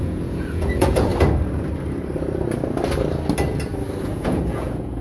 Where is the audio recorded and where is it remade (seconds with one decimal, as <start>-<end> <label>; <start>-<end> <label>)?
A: 0.0-1.1 remade; 1.1-4.0 recorded; 4.0-5.0 remade